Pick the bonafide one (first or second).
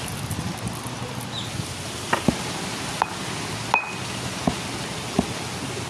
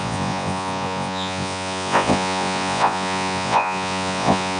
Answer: first